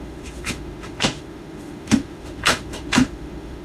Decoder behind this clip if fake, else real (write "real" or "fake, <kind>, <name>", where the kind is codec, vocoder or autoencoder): fake, autoencoder, DAC-VAE